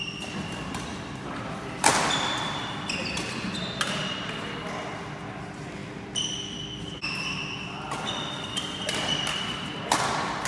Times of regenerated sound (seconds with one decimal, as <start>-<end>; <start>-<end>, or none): none

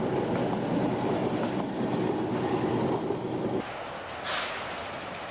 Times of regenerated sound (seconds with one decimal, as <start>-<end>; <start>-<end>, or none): 4.8-5.3